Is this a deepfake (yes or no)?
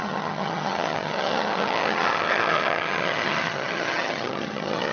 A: yes